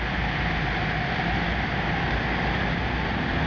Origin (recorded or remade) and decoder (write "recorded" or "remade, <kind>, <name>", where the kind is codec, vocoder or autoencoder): recorded